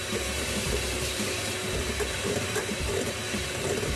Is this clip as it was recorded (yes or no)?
no